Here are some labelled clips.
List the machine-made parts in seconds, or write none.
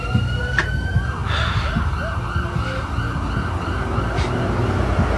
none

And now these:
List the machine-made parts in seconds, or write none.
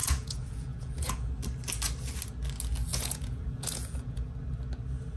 0.0-1.3 (vocoder, Vocos); 2.9-4.3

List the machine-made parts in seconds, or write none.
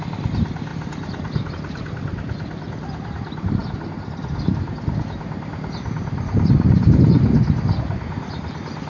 none